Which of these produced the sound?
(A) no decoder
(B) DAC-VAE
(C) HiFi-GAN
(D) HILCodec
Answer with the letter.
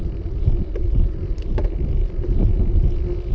A